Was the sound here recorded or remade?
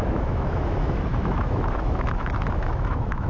remade